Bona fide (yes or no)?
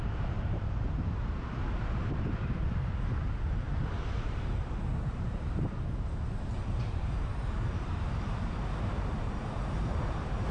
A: no